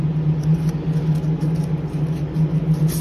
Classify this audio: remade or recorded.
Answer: recorded